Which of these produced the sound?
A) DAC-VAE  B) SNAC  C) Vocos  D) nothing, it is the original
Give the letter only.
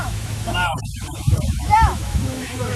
A